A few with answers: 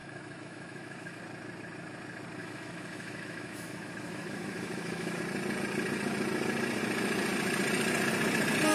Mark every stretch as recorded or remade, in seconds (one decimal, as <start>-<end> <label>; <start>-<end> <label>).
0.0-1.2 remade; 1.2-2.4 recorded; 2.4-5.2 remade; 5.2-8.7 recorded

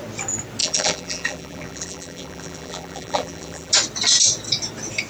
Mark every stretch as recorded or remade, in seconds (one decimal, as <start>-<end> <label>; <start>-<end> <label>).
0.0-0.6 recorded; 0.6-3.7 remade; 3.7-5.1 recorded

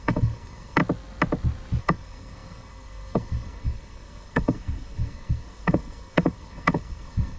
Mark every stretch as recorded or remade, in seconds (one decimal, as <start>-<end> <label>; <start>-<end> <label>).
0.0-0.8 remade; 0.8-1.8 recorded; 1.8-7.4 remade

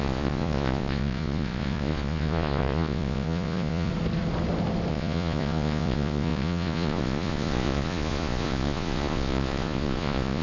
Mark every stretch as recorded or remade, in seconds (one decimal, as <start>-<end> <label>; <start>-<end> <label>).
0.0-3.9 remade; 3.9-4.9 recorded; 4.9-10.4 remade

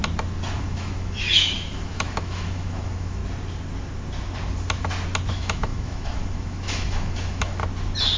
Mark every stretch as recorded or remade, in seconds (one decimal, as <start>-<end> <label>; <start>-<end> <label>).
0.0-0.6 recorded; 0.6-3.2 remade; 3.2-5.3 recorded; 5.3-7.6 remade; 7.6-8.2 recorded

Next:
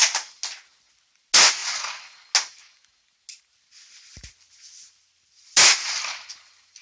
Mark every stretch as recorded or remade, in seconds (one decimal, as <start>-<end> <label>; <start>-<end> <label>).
0.0-6.8 recorded

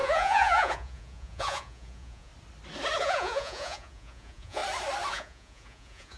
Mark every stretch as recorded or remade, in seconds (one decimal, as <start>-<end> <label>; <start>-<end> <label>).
0.0-2.3 remade; 2.3-3.0 recorded; 3.0-4.6 remade; 4.6-5.1 recorded; 5.1-6.2 remade